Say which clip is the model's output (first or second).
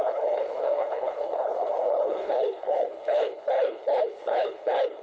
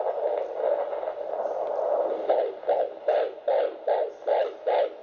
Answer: first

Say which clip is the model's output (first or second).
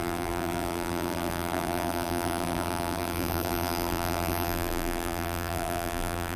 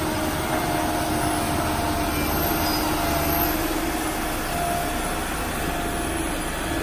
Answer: first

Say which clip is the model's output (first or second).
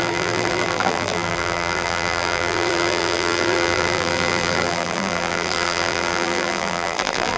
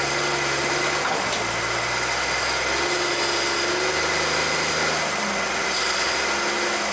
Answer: first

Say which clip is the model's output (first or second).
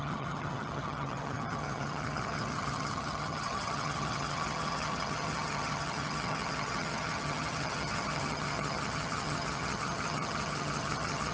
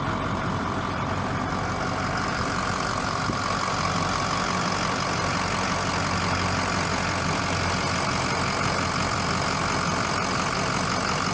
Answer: first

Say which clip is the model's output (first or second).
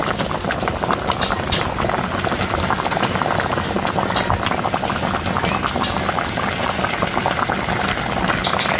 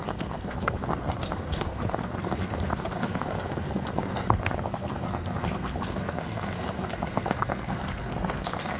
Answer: second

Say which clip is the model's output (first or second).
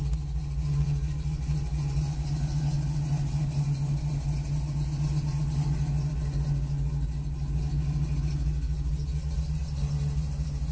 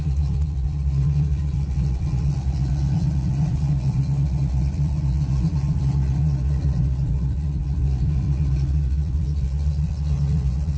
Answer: second